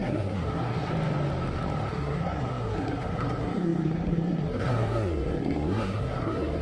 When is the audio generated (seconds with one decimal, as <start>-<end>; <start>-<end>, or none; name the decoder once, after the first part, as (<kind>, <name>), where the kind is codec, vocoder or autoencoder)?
0.0-0.9 (codec, SNAC); 1.9-6.6